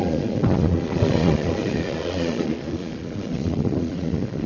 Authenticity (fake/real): fake